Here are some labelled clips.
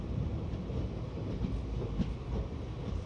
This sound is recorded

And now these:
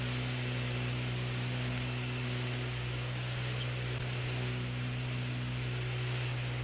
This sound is recorded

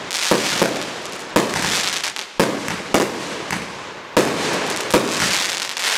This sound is recorded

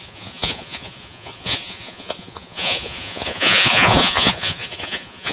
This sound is remade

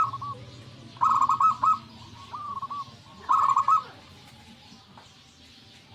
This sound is recorded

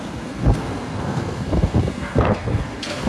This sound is remade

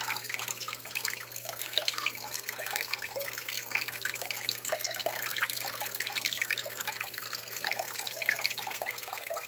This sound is remade